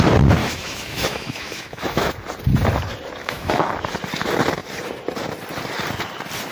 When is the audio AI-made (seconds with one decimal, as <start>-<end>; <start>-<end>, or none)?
0.4-2.1; 3.2-3.7